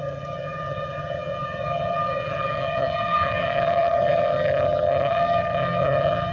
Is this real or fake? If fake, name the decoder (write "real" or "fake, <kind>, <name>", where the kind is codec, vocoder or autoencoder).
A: fake, vocoder, HiFi-GAN